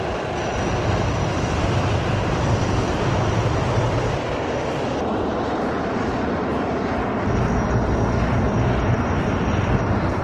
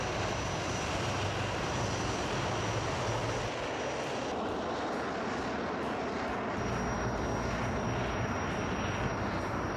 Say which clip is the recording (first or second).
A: second